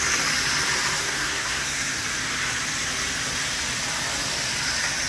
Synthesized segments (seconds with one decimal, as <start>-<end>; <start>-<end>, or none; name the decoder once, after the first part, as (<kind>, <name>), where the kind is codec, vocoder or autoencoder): 1.0-1.9 (codec, SNAC)